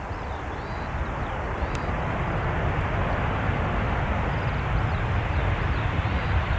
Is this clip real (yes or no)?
yes